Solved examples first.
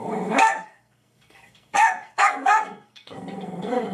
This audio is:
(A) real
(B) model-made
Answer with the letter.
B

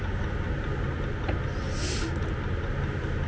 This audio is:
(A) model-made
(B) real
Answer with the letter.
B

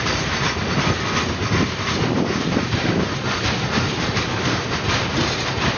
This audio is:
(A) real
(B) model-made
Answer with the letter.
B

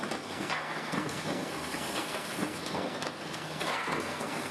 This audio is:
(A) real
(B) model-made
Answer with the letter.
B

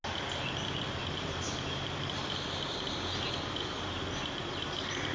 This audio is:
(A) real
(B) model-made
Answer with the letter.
A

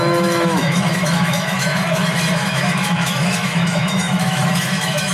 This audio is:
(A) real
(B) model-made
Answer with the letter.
B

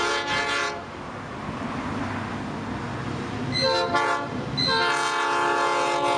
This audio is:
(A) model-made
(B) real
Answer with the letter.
B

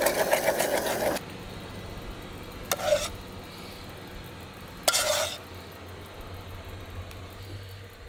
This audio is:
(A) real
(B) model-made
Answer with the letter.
A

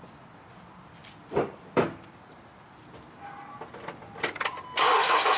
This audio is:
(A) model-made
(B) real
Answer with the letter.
B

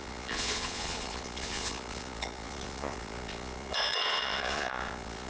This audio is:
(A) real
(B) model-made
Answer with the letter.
B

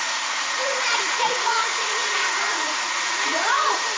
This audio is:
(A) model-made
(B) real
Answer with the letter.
A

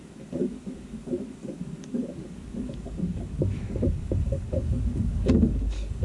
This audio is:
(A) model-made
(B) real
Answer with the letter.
A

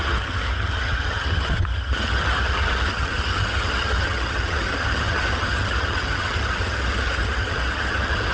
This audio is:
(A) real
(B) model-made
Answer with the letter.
B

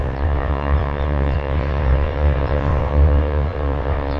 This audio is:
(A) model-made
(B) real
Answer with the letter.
A